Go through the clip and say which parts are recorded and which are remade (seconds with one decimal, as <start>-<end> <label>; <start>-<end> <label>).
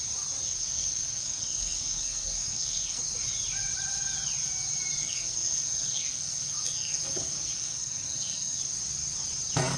0.0-0.6 recorded; 0.6-3.0 remade; 3.0-5.0 recorded; 5.0-8.6 remade; 8.6-9.8 recorded